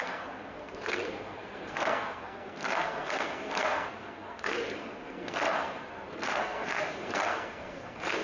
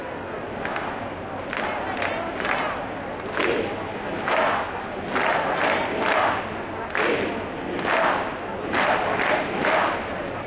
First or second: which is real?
second